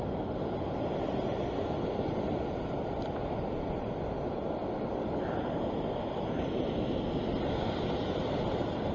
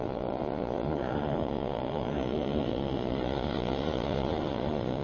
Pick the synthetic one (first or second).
second